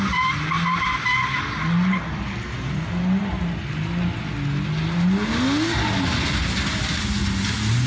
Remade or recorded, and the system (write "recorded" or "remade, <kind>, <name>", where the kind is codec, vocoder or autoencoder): recorded